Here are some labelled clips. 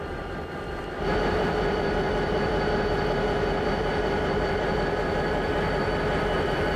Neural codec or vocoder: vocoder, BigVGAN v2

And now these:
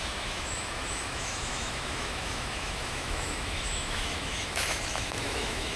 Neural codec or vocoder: autoencoder, DAC-VAE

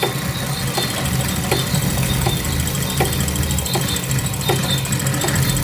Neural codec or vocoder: none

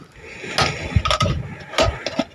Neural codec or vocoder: none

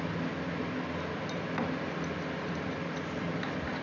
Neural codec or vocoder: none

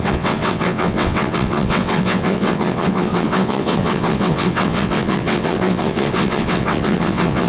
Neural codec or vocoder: vocoder, WaveNeXt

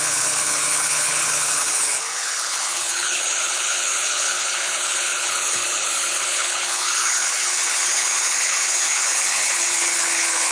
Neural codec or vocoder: codec, HILCodec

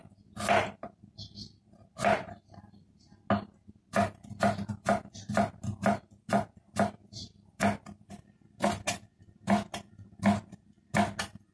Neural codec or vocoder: none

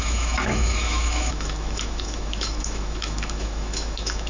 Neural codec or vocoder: autoencoder, DAC-VAE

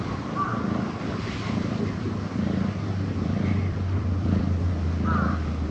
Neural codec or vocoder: vocoder, BigVGAN v2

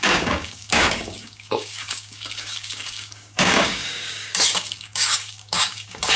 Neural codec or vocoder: codec, DAC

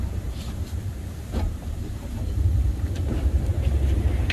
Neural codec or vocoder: vocoder, BigVGAN v2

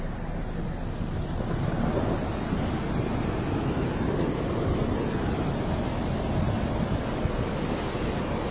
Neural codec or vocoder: none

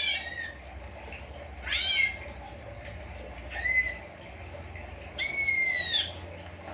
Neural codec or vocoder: none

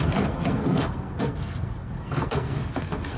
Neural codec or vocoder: codec, SNAC